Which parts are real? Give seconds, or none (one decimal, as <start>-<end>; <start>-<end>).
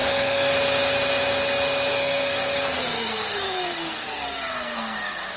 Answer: 0.5-1.9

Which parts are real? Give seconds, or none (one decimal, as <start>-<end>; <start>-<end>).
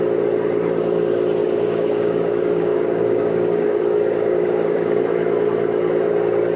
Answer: 0.0-1.4; 5.0-6.6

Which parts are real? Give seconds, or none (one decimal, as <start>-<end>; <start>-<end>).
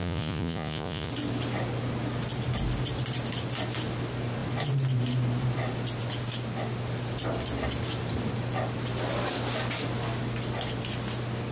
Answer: 1.1-11.5